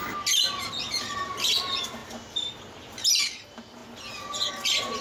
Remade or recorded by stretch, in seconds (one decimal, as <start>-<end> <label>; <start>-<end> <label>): 0.0-2.0 recorded; 2.0-3.0 remade; 3.0-5.0 recorded